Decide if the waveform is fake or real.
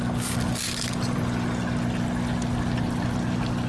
real